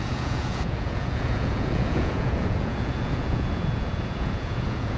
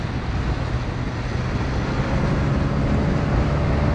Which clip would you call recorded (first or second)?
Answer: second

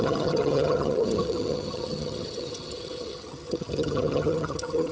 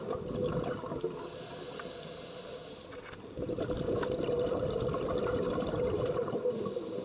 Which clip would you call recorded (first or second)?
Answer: second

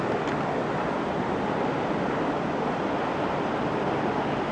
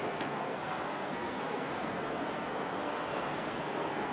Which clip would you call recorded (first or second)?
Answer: first